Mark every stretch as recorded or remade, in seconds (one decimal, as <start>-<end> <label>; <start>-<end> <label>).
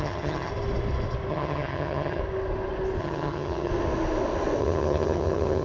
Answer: 0.0-0.5 remade; 0.5-1.3 recorded; 1.3-2.2 remade; 2.2-3.0 recorded; 3.0-3.7 remade; 3.7-4.6 recorded; 4.6-5.6 remade